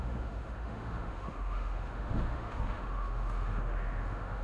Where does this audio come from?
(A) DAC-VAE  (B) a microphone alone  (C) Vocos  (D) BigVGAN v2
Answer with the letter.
A